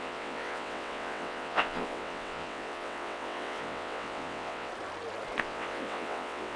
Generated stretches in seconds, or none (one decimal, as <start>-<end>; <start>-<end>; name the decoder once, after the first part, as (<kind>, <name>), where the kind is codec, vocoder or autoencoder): 0.0-4.7 (vocoder, WaveNeXt); 5.4-6.6